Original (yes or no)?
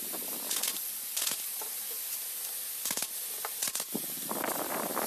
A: no